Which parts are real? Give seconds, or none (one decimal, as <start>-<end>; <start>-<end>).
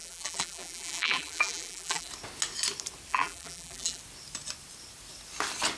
2.1-3.1; 4.0-5.8